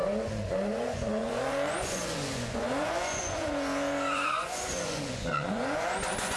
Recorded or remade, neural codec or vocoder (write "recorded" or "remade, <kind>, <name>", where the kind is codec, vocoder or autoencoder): remade, vocoder, Vocos